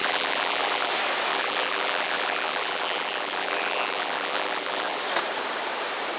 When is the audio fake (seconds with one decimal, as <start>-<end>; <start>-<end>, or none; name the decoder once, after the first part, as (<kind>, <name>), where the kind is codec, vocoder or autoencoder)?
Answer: 0.0-0.9 (vocoder, BigVGAN v2); 1.3-5.0